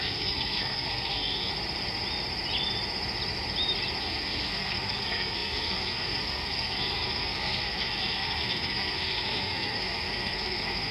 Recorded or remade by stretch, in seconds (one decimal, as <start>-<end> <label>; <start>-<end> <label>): 0.0-1.5 remade; 1.5-4.0 recorded; 4.0-10.9 remade